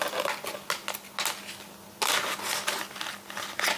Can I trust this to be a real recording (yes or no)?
yes